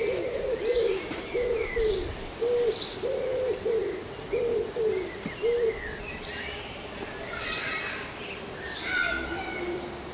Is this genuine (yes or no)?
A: no